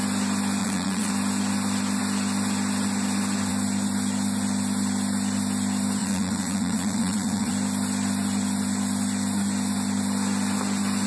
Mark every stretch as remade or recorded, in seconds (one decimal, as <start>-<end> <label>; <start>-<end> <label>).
0.0-0.6 recorded; 0.6-1.1 remade; 1.1-6.0 recorded; 6.0-7.5 remade; 7.5-11.1 recorded